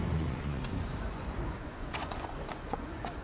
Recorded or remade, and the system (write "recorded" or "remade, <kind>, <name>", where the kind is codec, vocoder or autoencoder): remade, vocoder, Vocos